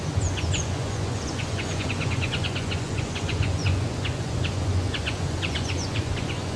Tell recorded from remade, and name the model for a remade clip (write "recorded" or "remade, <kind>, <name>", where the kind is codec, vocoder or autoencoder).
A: remade, vocoder, Vocos